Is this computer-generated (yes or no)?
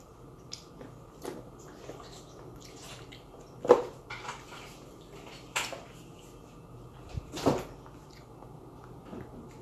no